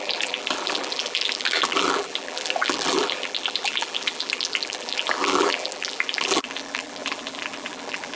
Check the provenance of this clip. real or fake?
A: fake